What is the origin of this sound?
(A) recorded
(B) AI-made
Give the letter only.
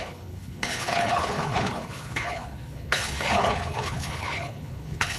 B